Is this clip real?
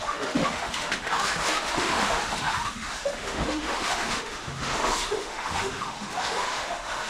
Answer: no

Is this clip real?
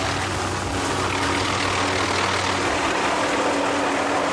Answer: yes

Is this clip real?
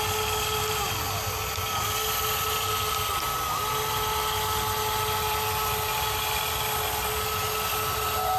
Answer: yes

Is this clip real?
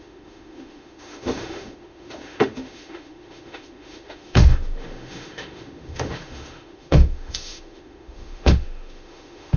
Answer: no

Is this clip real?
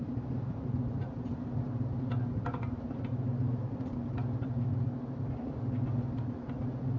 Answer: yes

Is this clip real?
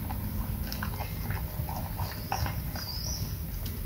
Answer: yes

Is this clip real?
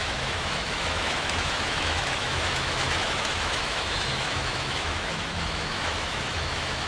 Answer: no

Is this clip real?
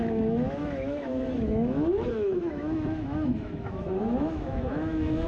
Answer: no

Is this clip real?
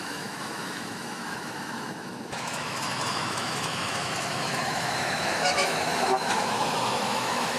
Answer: no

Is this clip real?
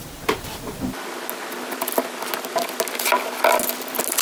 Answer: yes